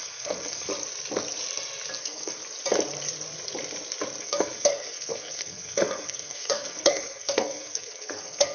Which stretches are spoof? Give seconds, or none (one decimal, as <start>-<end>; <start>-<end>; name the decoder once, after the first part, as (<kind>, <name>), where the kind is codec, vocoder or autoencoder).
0.0-0.7 (codec, SNAC); 2.0-2.4; 4.2-8.5